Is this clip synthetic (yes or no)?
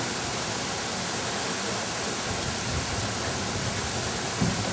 no